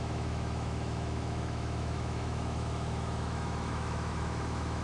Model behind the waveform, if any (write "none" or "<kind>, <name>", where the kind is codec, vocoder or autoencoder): autoencoder, DAC-VAE